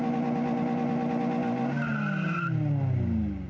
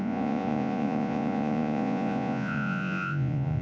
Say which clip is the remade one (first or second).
second